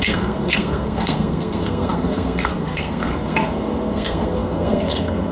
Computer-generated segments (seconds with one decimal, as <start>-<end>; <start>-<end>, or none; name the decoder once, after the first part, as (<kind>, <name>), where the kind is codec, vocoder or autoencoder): 0.0-5.3 (codec, SNAC)